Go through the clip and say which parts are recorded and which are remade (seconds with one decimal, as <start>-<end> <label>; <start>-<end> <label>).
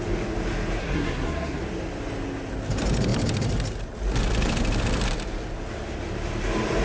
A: 0.0-0.8 recorded; 0.8-1.6 remade; 1.6-6.8 recorded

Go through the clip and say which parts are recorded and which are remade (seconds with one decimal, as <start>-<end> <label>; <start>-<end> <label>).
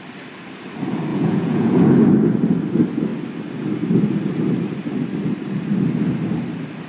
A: 0.0-1.1 recorded; 1.1-2.0 remade; 2.0-6.9 recorded